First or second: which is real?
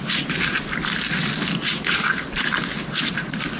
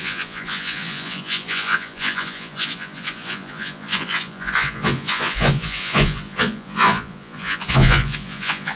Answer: first